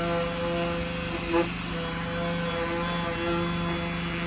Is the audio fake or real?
real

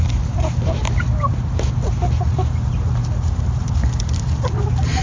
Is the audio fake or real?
real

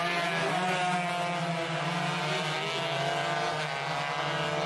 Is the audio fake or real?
real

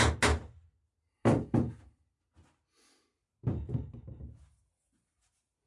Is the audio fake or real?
real